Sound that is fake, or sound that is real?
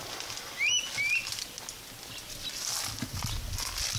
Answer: real